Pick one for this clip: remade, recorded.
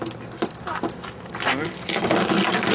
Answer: recorded